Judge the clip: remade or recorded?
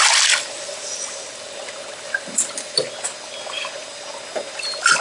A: recorded